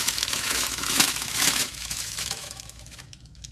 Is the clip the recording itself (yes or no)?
no